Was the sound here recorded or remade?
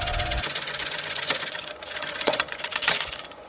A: remade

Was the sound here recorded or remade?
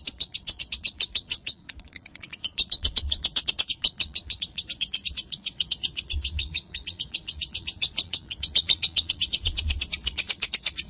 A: remade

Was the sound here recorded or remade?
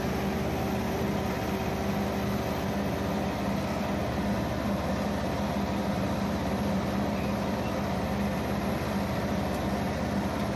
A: recorded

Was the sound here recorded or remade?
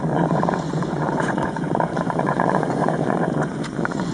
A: remade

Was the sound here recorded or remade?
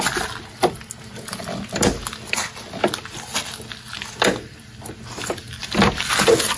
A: recorded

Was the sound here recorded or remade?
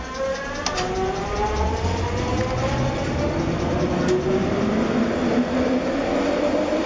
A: recorded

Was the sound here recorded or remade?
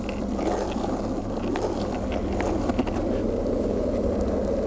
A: recorded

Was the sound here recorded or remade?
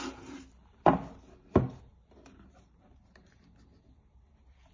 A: recorded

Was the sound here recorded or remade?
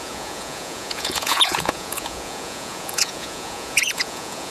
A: remade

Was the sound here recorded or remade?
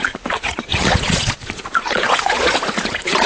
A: remade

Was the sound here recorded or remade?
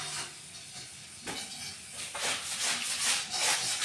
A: recorded